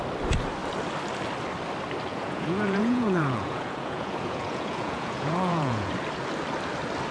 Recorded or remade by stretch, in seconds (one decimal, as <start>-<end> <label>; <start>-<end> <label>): 0.0-2.1 recorded; 2.1-5.9 remade; 5.9-7.1 recorded